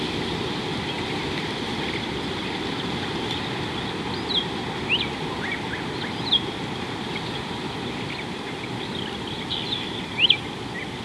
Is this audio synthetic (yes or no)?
no